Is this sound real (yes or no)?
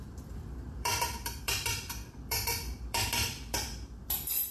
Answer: no